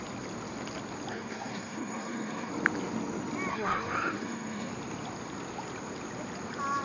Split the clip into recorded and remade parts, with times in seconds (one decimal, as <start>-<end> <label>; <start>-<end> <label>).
0.0-1.1 recorded; 1.1-2.5 remade; 2.5-3.5 recorded; 3.5-4.7 remade; 4.7-6.8 recorded